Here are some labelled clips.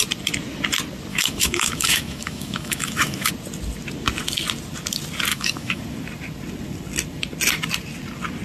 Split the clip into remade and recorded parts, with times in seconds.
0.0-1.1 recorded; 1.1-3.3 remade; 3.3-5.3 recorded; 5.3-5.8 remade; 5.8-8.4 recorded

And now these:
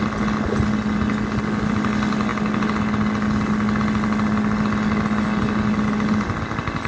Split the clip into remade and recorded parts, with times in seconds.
0.0-6.9 recorded

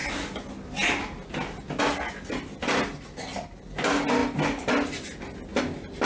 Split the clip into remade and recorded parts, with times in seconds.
0.0-6.1 recorded

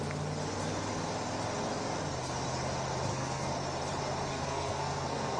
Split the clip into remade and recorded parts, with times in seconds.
0.0-3.1 recorded; 3.1-3.6 remade; 3.6-4.3 recorded; 4.3-5.4 remade

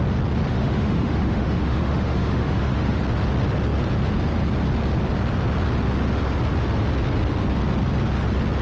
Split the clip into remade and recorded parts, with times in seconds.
0.0-0.5 recorded; 0.5-3.0 remade; 3.0-8.6 recorded